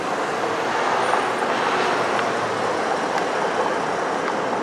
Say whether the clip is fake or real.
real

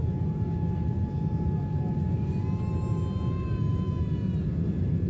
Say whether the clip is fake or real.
real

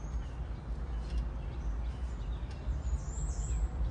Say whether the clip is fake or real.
real